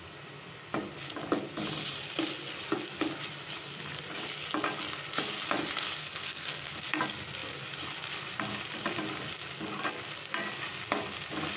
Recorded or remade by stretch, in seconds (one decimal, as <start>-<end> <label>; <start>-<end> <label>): 0.0-6.0 recorded; 6.0-6.7 remade; 6.7-11.6 recorded